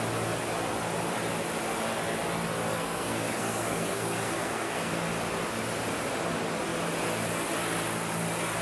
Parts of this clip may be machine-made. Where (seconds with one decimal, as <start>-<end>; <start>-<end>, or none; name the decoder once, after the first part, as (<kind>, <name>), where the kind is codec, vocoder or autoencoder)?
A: 2.7-5.0 (codec, SNAC)